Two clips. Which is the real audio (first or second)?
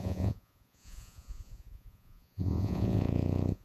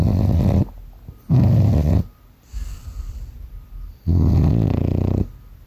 second